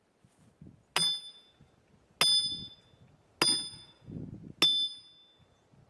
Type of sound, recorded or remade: recorded